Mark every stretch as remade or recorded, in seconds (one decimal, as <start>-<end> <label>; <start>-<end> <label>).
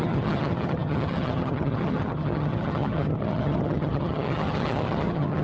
0.0-5.4 remade